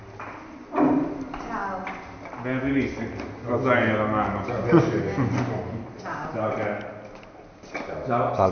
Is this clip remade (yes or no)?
no